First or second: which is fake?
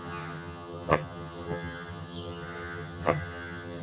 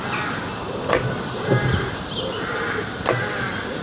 first